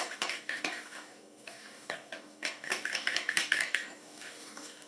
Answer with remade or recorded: remade